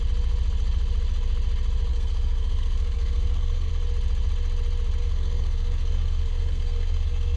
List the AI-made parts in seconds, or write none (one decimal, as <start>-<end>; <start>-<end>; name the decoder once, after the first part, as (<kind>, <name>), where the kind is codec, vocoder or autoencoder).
1.9-3.7 (codec, SNAC); 5.0-7.4